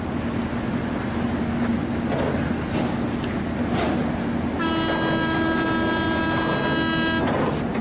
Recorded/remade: recorded